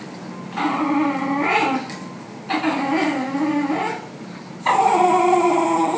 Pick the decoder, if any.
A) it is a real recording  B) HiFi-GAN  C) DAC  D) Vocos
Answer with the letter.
A